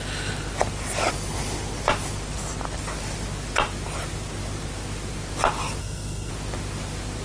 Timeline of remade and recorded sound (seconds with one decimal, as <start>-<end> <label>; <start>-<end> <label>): 0.0-5.8 recorded; 5.8-6.3 remade; 6.3-7.2 recorded